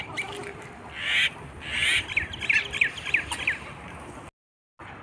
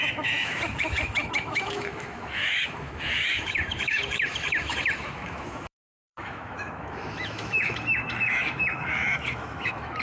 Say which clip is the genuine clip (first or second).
first